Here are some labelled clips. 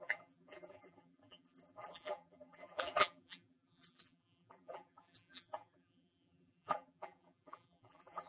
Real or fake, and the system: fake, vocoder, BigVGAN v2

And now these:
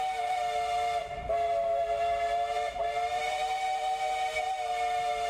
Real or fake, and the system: fake, vocoder, BigVGAN v2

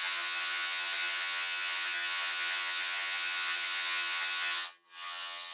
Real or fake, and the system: fake, vocoder, HiFi-GAN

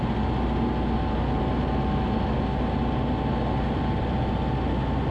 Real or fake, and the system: real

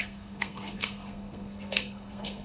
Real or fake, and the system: fake, codec, SNAC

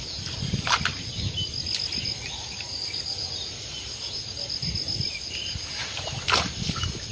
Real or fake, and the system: real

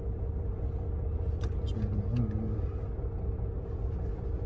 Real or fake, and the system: real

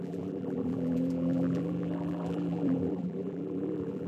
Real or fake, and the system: fake, vocoder, BigVGAN v2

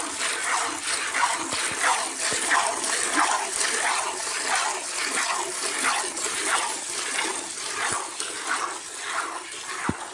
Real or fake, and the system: real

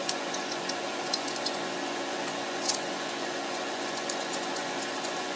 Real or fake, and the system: fake, vocoder, Vocos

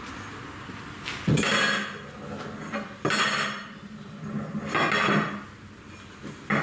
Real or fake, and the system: real